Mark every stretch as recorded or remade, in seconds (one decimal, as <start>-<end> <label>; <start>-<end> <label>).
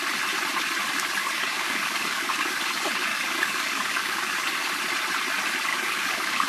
0.0-1.2 recorded; 1.2-2.6 remade; 2.6-3.1 recorded; 3.1-4.7 remade; 4.7-5.7 recorded; 5.7-6.5 remade